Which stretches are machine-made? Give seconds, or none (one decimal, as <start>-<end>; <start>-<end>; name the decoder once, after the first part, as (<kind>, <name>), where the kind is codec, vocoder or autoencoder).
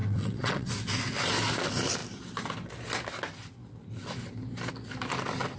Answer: 0.0-0.7 (vocoder, WaveNeXt)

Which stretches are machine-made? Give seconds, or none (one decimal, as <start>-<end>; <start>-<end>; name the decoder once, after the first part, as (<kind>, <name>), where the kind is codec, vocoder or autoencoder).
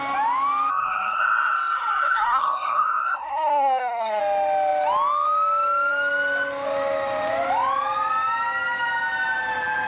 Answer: 0.7-4.2 (codec, SNAC)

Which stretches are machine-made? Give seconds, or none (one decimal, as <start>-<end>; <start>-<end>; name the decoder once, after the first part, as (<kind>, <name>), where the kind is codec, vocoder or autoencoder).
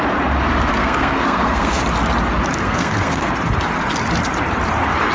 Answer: 0.7-1.8 (codec, SNAC); 2.6-3.3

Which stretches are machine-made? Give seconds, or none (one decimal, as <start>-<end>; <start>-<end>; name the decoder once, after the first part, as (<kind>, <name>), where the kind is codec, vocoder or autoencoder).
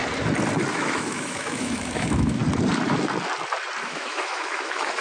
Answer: 0.7-2.4 (autoencoder, DAC-VAE); 3.8-5.0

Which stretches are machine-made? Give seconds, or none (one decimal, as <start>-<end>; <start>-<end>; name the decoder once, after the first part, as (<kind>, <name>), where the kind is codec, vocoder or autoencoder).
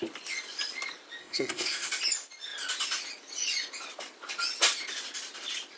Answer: 1.2-1.9 (codec, ZipCodec)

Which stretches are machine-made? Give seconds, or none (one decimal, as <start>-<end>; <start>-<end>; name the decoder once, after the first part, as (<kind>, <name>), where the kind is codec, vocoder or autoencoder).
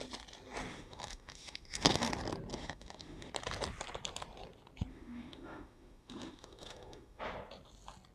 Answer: 0.7-2.1 (autoencoder, DAC-VAE); 2.5-3.3; 4.9-7.2